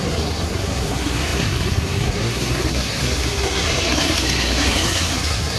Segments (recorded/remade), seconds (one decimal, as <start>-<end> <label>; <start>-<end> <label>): 0.0-5.6 remade